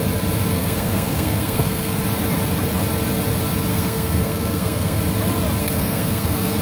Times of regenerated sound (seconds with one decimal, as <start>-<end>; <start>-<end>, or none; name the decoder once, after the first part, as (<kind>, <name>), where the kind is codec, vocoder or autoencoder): 0.5-2.0 (codec, SNAC); 3.7-5.0; 5.6-6.6